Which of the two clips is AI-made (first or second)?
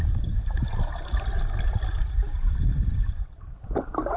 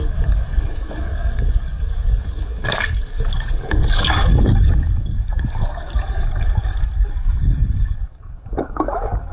second